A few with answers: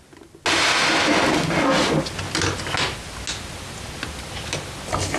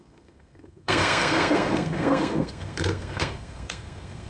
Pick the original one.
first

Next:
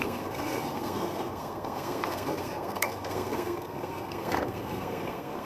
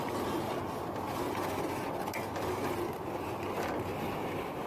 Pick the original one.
second